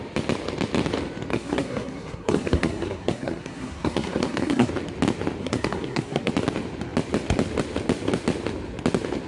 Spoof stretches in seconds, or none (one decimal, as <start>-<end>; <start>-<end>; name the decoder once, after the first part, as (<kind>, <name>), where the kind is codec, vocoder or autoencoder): 1.3-4.7 (codec, SNAC); 5.4-6.3